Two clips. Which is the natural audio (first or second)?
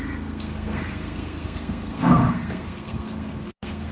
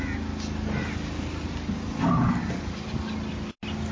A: second